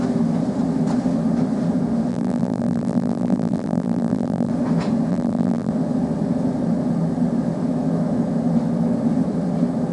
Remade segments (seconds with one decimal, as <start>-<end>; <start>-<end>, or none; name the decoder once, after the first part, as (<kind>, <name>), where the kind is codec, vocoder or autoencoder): 2.1-4.5 (vocoder, BigVGAN v2); 5.1-5.7